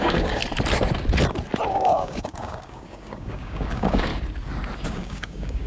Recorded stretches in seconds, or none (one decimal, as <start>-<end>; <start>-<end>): 0.4-1.7; 4.1-4.9